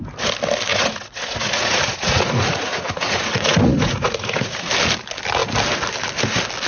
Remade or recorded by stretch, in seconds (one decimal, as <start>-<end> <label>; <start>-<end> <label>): 0.0-0.7 recorded; 0.7-4.7 remade; 4.7-6.7 recorded